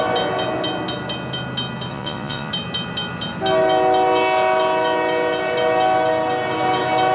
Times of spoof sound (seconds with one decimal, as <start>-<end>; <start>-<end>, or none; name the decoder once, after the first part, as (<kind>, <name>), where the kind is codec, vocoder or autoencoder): 1.9-2.5 (vocoder, Vocos)